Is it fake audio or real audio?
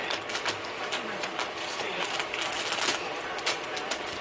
real